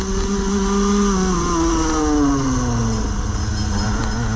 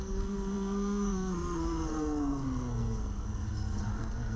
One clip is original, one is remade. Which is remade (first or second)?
second